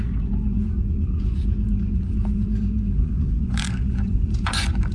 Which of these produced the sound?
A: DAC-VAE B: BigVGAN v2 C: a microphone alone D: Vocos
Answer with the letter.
D